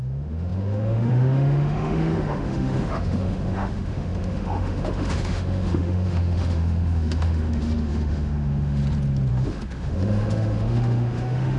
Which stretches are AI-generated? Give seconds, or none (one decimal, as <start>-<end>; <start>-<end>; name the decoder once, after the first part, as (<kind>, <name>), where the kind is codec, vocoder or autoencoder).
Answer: 0.0-8.8 (autoencoder, DAC-VAE); 9.3-11.6